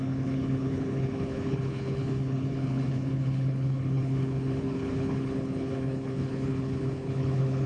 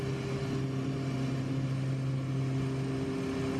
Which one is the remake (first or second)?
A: first